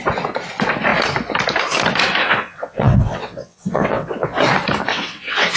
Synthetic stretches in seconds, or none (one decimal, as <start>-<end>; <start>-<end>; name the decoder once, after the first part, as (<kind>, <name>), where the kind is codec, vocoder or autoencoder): 2.2-4.4 (vocoder, WaveNeXt); 4.9-5.6